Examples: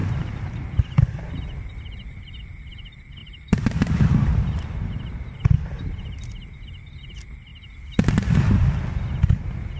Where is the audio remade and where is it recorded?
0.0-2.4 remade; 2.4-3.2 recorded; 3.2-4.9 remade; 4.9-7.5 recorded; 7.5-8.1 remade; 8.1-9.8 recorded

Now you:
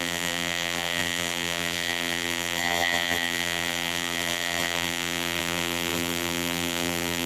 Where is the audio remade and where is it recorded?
0.0-7.3 remade